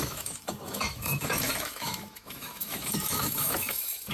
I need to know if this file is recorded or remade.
remade